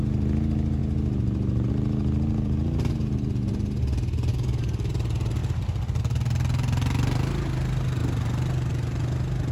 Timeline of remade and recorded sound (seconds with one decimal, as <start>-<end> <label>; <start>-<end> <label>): 0.0-4.3 recorded; 4.3-4.9 remade; 4.9-9.5 recorded